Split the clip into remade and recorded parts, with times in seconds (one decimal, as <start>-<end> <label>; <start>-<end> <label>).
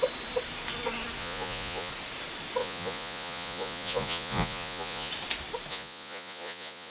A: 0.0-1.2 recorded; 1.2-1.9 remade; 1.9-2.6 recorded; 2.6-5.1 remade; 5.1-5.7 recorded; 5.7-6.9 remade